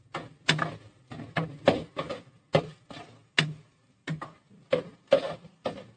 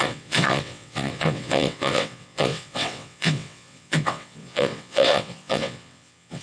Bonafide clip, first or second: first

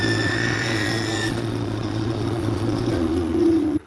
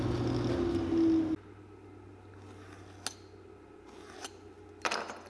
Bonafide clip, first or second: second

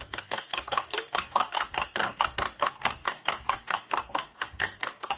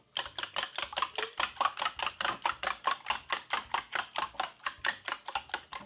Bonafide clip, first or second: second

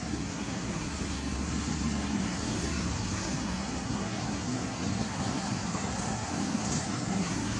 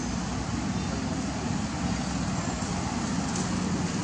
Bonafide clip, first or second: second